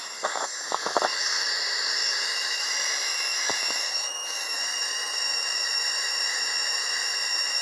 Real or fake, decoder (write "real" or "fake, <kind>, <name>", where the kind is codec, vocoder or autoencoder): fake, autoencoder, DAC-VAE